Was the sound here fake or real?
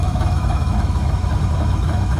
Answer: fake